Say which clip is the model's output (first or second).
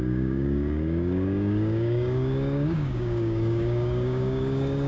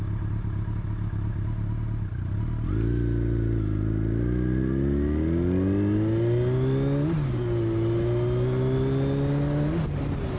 first